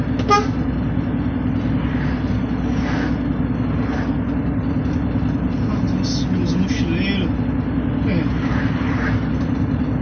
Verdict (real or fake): real